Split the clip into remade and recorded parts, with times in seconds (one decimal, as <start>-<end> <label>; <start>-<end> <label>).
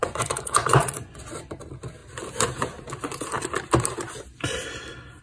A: 0.0-1.2 remade; 1.2-5.2 recorded